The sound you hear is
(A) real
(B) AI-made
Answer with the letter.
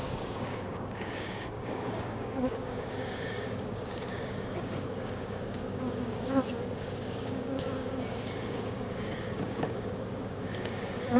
B